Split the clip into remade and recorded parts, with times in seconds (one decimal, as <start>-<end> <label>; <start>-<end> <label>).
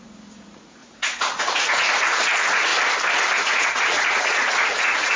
0.0-2.7 remade; 2.7-3.4 recorded; 3.4-5.2 remade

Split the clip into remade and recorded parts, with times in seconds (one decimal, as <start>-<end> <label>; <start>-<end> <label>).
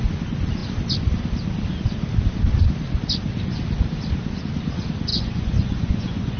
0.0-5.1 recorded; 5.1-6.4 remade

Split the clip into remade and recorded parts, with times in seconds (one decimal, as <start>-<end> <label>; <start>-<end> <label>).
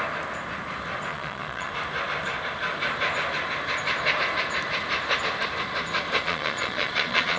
0.0-1.1 recorded; 1.1-1.7 remade; 1.7-6.2 recorded; 6.2-7.4 remade